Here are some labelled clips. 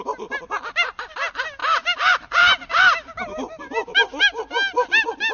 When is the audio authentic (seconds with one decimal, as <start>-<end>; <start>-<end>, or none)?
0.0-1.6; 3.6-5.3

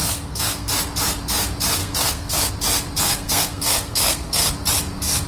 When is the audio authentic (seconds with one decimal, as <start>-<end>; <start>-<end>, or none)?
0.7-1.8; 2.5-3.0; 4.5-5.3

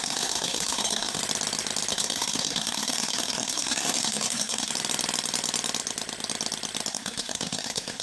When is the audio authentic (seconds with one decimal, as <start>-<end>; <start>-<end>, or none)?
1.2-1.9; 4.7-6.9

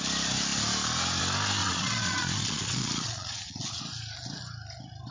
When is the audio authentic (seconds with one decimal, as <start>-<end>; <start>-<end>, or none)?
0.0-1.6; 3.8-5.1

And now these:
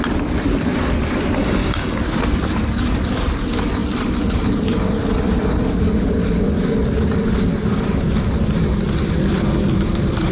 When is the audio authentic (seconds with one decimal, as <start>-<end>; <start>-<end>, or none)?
0.0-1.4; 2.0-10.3

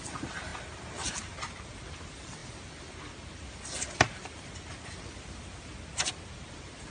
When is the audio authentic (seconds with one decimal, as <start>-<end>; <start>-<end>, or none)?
0.0-6.9

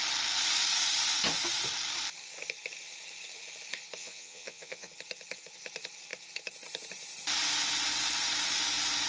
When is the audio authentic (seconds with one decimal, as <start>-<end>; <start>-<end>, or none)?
0.0-4.0; 4.9-9.1